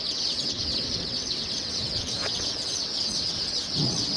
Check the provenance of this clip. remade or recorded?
remade